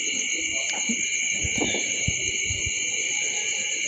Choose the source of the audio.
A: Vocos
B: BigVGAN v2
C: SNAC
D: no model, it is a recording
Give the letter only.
D